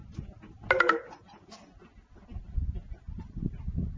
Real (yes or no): yes